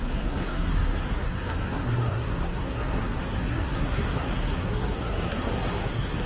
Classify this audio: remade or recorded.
remade